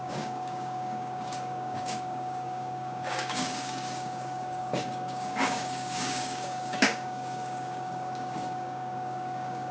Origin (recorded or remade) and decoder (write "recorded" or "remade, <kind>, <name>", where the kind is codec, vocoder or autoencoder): remade, codec, DAC